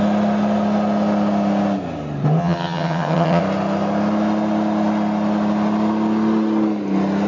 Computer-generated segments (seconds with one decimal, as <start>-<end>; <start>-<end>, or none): 2.4-3.4